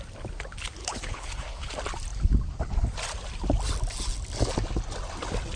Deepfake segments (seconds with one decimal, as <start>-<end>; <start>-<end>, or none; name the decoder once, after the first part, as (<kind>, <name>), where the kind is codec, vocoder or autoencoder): 0.8-1.7 (codec, HILCodec)